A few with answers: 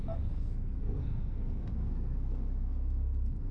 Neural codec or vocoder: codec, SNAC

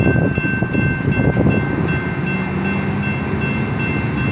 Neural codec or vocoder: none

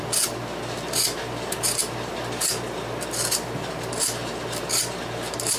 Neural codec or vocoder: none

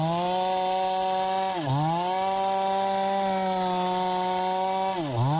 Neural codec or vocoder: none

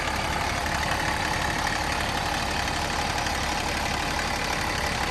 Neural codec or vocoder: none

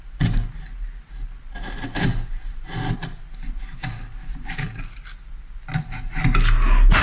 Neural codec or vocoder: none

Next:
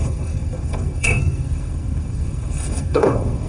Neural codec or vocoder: codec, SNAC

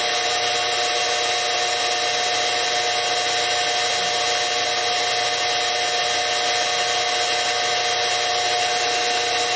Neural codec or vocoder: none